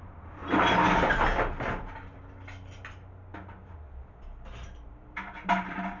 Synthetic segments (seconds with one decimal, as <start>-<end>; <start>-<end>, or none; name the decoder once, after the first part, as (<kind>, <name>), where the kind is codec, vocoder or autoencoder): 0.0-0.4 (vocoder, BigVGAN v2); 4.0-6.0